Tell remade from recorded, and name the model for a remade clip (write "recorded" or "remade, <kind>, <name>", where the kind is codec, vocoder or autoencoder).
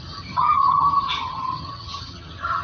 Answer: remade, vocoder, HiFi-GAN